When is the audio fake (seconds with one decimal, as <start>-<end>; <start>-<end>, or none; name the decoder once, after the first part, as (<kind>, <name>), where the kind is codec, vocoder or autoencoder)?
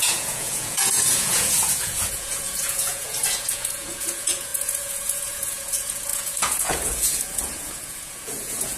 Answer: 0.0-8.8 (vocoder, Vocos)